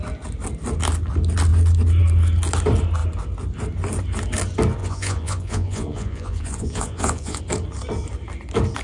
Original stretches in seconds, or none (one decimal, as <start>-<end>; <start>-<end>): 0.0-4.8; 7.4-8.8